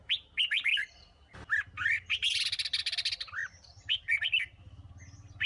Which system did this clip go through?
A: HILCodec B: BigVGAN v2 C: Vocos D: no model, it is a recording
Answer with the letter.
D